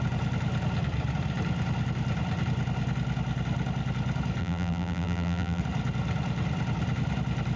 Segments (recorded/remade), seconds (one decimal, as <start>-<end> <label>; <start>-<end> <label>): 0.0-4.4 recorded; 4.4-5.6 remade; 5.6-7.6 recorded